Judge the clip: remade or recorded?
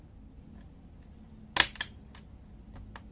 recorded